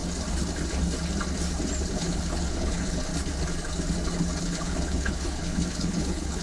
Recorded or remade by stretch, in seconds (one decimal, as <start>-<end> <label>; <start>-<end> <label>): 0.0-1.9 recorded; 1.9-3.1 remade; 3.1-4.4 recorded; 4.4-6.4 remade